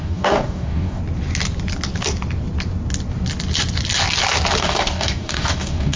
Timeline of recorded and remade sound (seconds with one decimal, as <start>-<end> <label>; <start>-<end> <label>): 0.0-1.0 remade; 1.0-4.6 recorded; 4.6-6.0 remade